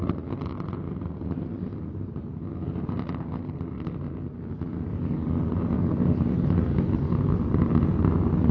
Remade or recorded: recorded